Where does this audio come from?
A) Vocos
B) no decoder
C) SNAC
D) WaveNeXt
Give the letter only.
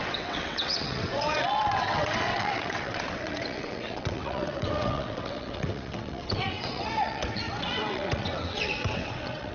D